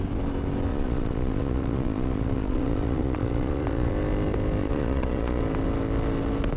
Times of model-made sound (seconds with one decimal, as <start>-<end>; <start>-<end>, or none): 0.7-3.9; 4.6-5.4